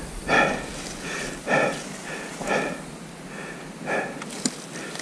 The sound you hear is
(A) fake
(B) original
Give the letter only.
B